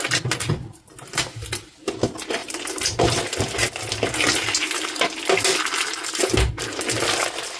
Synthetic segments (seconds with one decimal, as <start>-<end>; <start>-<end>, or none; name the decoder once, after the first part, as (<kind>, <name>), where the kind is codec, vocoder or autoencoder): 2.4-3.2 (vocoder, BigVGAN v2)